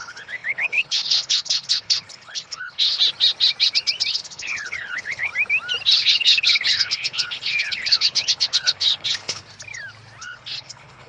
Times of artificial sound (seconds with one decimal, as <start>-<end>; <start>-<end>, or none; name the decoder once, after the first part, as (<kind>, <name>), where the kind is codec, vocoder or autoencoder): 0.0-3.0 (codec, HILCodec); 4.1-5.3; 6.1-9.5; 10.2-11.1

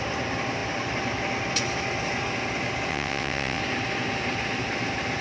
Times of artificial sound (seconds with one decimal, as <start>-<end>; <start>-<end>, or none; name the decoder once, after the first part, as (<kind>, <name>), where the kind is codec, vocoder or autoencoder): 2.9-3.6 (vocoder, WaveNeXt)

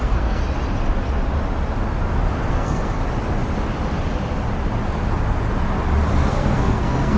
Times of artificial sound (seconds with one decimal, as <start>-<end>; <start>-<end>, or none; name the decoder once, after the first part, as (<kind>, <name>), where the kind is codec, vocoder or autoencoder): 0.0-0.4 (codec, SNAC); 2.5-3.0; 6.3-7.2

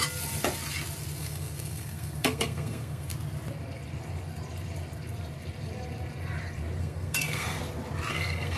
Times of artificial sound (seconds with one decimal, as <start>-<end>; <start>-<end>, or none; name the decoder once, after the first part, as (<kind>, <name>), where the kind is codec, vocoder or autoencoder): 1.2-3.1 (codec, SNAC); 6.8-7.6; 8.1-8.6

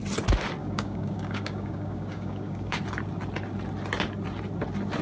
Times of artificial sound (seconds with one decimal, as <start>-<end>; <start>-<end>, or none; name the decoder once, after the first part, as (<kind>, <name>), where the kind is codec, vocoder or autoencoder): 0.6-2.8 (codec, DAC)

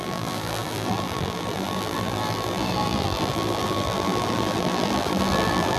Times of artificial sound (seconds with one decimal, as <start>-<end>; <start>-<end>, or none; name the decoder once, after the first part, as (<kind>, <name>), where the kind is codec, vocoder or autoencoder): 0.0-5.8 (vocoder, BigVGAN v2)

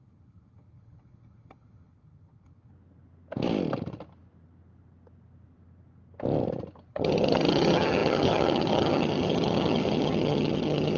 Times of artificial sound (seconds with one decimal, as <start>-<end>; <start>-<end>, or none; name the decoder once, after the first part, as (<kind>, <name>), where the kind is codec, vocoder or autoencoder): 0.0-2.7 (vocoder, HiFi-GAN); 6.9-11.0